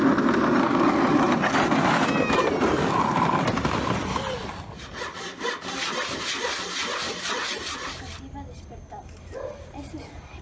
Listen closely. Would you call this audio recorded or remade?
recorded